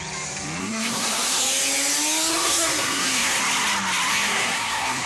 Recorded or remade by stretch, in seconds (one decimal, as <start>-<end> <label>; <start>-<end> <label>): 0.0-0.6 recorded; 0.6-1.4 remade; 1.4-2.3 recorded; 2.3-3.4 remade; 3.4-4.1 recorded; 4.1-5.1 remade